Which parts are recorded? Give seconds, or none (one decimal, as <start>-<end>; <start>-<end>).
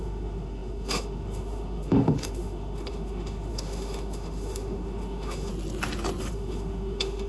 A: 5.5-6.3